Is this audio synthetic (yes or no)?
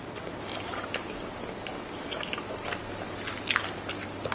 no